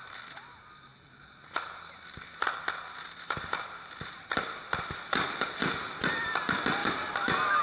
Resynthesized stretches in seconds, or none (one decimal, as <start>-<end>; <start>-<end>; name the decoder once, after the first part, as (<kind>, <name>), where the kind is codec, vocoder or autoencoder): none